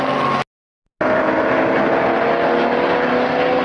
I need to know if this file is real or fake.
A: real